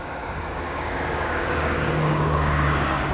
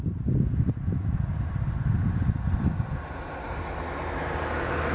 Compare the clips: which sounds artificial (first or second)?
first